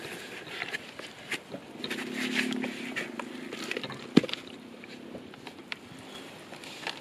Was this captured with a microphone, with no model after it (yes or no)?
no